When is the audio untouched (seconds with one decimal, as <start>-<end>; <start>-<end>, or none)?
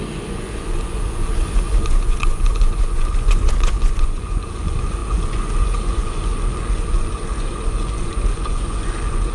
none